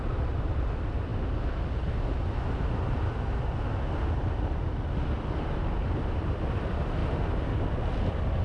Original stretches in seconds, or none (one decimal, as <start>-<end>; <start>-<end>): 1.1-5.1; 7.0-8.4